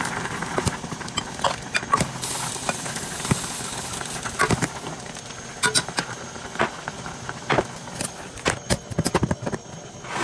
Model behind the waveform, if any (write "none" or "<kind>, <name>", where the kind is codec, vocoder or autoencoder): none